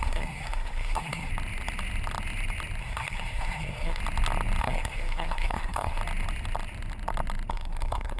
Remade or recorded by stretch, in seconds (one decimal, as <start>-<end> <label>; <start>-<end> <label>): 0.0-1.3 remade; 1.3-2.8 recorded; 2.8-4.0 remade; 4.0-4.6 recorded; 4.6-6.0 remade; 6.0-7.5 recorded; 7.5-8.2 remade